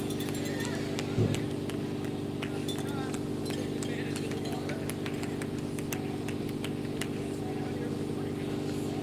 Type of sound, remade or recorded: recorded